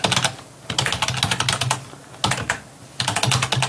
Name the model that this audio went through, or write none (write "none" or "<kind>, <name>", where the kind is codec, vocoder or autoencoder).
none